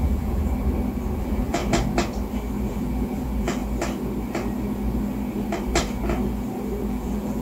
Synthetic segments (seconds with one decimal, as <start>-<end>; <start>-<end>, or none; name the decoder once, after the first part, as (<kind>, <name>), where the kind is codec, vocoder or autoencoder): 0.0-0.4 (vocoder, BigVGAN v2); 1.2-1.6; 2.7-3.6; 6.9-7.4